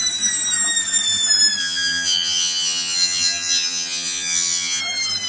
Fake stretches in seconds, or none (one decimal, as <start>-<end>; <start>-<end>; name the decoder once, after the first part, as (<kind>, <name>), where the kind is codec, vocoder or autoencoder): 1.6-4.8 (vocoder, HiFi-GAN)